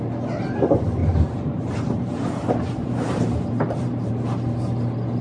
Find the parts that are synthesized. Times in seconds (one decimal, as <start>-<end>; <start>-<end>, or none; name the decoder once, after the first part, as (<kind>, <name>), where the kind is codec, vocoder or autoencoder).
1.0-4.1 (vocoder, BigVGAN v2)